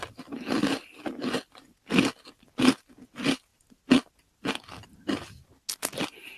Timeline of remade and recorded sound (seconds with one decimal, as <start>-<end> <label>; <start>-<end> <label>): 0.0-6.4 recorded